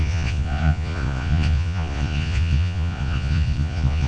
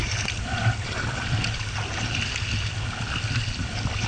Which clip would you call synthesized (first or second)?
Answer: first